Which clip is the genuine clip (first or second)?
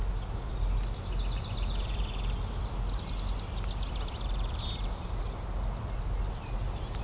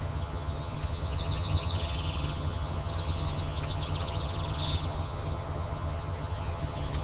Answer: first